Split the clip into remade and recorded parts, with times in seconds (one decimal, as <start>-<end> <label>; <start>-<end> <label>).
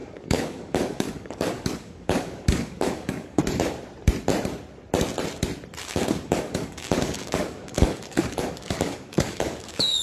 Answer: 0.0-3.4 remade; 3.4-5.8 recorded; 5.8-10.0 remade